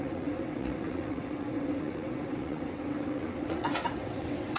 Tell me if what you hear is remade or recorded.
remade